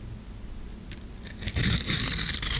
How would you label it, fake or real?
real